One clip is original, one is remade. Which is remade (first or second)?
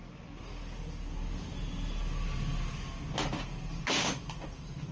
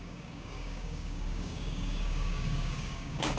second